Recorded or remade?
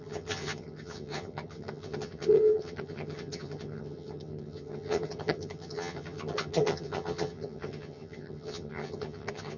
remade